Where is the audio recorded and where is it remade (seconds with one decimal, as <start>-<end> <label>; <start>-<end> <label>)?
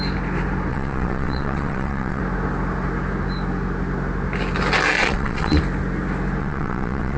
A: 0.0-0.7 recorded; 0.7-2.2 remade; 2.2-5.0 recorded; 5.0-5.6 remade; 5.6-6.4 recorded; 6.4-7.2 remade